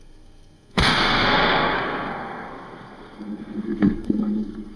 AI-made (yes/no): yes